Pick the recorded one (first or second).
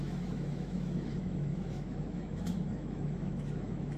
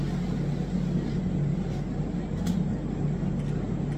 second